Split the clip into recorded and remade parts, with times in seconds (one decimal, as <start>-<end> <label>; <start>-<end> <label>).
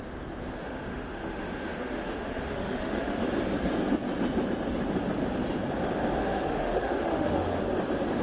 0.0-0.6 recorded; 0.6-3.3 remade; 3.3-6.2 recorded; 6.2-7.6 remade; 7.6-8.2 recorded